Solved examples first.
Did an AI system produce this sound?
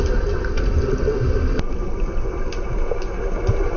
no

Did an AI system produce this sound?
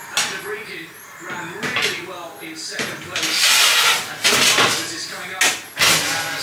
no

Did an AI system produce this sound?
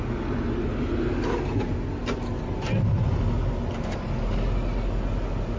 no